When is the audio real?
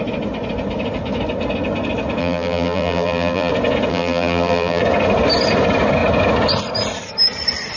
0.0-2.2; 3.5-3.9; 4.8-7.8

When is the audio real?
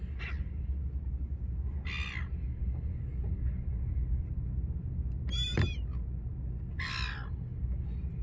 0.0-8.2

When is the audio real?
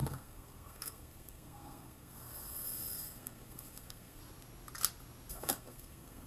4.2-5.3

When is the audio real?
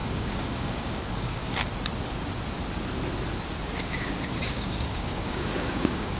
1.4-3.8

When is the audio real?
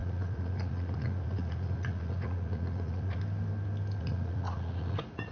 3.2-4.0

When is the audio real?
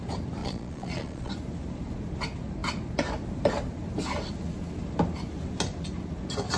0.0-0.4; 1.3-6.6